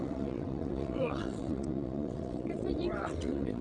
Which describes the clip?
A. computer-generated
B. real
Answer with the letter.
A